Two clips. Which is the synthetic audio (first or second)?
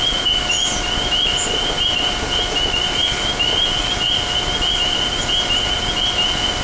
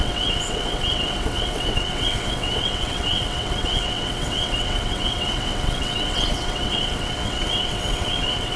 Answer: second